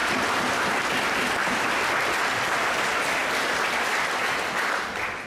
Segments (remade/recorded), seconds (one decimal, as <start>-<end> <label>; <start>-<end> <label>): 0.0-0.7 remade; 0.7-1.4 recorded; 1.4-2.6 remade; 2.6-3.2 recorded; 3.2-4.2 remade; 4.2-5.3 recorded